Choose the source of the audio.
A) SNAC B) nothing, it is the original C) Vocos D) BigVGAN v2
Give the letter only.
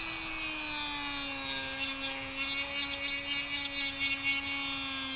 B